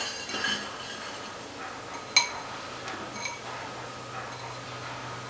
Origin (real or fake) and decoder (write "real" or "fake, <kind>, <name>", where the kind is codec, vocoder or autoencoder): real